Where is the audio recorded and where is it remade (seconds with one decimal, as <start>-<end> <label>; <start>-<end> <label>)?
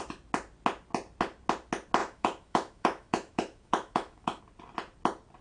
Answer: 0.0-2.0 recorded; 2.0-4.4 remade; 4.4-5.4 recorded